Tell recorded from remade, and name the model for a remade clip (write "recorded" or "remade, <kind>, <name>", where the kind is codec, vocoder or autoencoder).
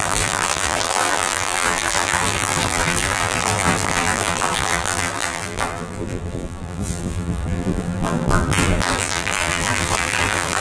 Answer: remade, vocoder, BigVGAN v2